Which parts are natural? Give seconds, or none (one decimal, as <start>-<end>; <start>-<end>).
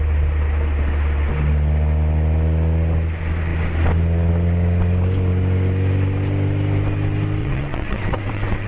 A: 0.0-7.4